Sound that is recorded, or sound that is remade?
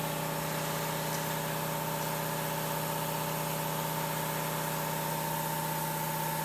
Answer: recorded